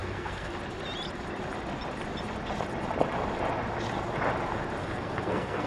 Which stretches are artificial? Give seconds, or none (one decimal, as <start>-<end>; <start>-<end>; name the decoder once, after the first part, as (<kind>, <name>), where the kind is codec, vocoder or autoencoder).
0.0-0.5 (codec, SNAC); 4.8-5.7